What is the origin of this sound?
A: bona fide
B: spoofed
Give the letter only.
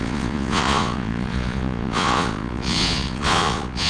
B